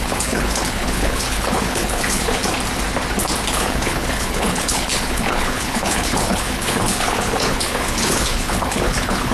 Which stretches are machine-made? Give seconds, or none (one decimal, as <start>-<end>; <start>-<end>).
0.0-2.4; 3.5-9.3